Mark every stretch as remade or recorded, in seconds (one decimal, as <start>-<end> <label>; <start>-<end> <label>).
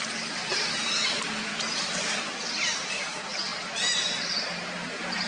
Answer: 0.0-5.3 recorded